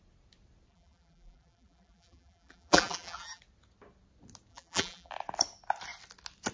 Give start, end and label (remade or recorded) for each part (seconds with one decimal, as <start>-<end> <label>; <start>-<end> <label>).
0.0-0.7 recorded; 0.7-3.4 remade; 3.4-4.5 recorded; 4.5-5.1 remade; 5.1-6.5 recorded